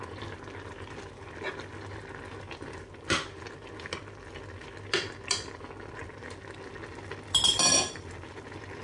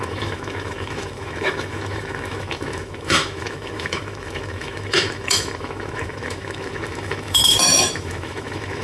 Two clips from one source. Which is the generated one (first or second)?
second